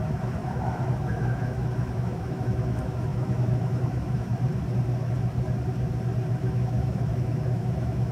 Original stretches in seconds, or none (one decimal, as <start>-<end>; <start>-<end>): 4.3-6.4